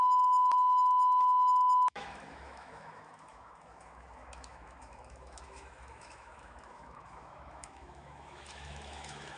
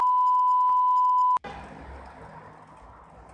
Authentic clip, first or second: second